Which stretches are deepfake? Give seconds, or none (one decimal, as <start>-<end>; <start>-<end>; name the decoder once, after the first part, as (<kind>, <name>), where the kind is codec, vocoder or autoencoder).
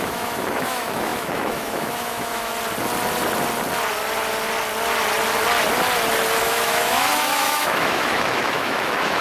0.0-2.5 (autoencoder, DAC-VAE); 6.4-9.2